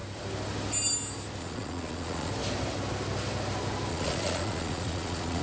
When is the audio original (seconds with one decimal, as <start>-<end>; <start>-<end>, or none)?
0.0-1.4; 2.3-3.9